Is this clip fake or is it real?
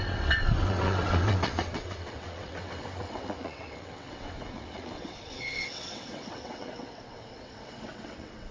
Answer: fake